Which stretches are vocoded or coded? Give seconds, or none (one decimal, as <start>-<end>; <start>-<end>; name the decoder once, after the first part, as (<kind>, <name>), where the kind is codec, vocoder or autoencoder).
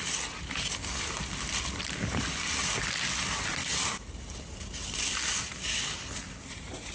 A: none